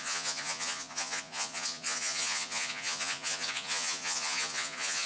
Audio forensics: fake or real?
fake